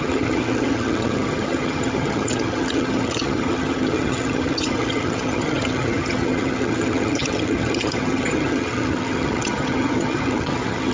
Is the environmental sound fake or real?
fake